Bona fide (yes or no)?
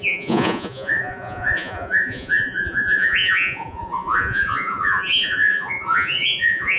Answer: no